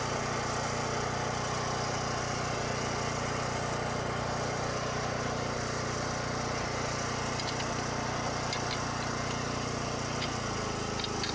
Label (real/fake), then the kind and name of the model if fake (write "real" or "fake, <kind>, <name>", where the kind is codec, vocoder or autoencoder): real